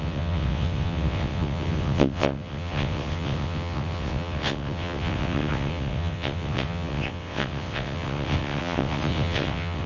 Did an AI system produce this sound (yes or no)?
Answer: yes